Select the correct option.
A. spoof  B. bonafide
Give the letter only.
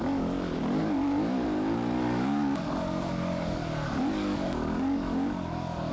A